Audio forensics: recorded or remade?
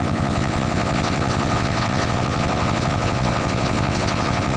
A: remade